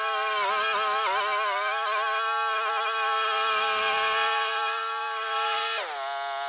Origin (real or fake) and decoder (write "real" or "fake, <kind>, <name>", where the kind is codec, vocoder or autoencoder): real